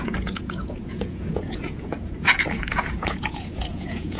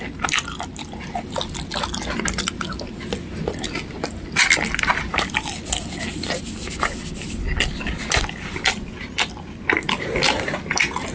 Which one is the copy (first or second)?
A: first